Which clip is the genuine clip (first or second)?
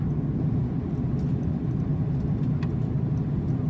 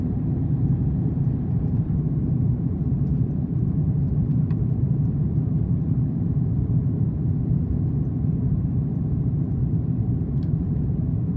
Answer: first